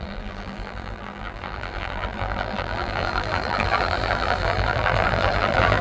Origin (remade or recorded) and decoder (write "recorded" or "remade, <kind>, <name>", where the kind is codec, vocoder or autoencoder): remade, vocoder, BigVGAN v2